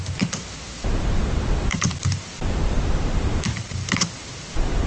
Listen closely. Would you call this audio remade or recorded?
remade